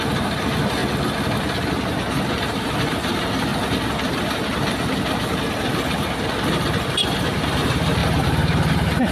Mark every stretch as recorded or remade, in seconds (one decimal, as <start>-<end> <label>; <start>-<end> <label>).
0.0-0.8 remade; 0.8-2.3 recorded; 2.3-3.5 remade; 3.5-6.9 recorded; 6.9-9.1 remade